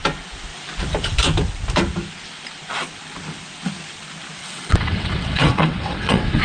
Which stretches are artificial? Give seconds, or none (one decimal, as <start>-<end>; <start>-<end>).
4.4-6.4